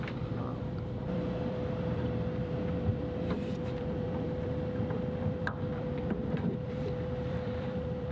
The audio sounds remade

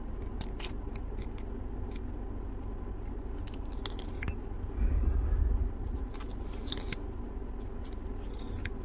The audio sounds recorded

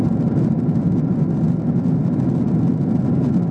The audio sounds recorded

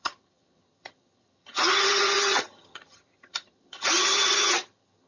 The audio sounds remade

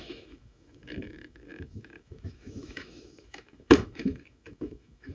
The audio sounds remade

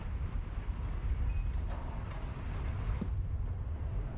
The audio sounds remade